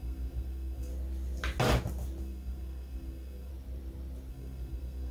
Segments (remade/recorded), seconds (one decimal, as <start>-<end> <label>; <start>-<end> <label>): 0.0-0.9 remade; 0.9-2.2 recorded; 2.2-3.5 remade; 3.5-4.3 recorded; 4.3-5.1 remade